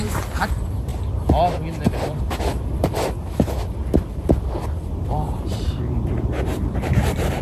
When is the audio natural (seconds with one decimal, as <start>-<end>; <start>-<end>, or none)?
0.9-5.1